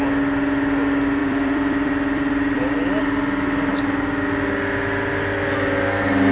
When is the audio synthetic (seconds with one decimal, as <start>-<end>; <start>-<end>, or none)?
1.2-3.0